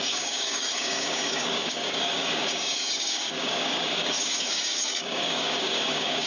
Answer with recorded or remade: remade